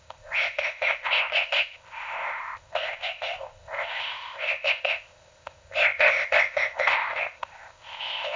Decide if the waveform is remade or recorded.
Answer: remade